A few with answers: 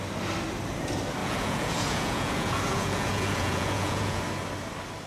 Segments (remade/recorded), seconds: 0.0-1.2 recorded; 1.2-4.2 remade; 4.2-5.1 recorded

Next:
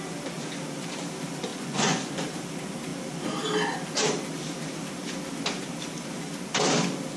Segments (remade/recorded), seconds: 0.0-1.5 recorded; 1.5-2.1 remade; 2.1-7.2 recorded

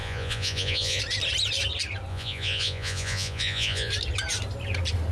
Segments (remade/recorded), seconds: 0.0-1.0 remade; 1.0-2.1 recorded; 2.1-3.9 remade; 3.9-5.1 recorded

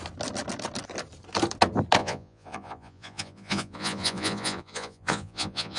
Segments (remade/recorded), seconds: 0.0-2.0 recorded; 2.0-5.8 remade

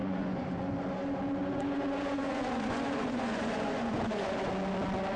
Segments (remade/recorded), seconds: 0.0-0.7 remade; 0.7-1.4 recorded; 1.4-4.5 remade; 4.5-5.2 recorded

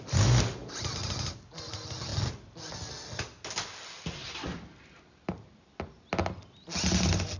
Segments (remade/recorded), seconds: 0.0-7.4 recorded

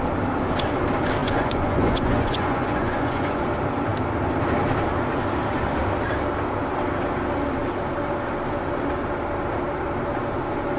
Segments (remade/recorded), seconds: 0.0-1.2 recorded; 1.2-3.4 remade; 3.4-10.8 recorded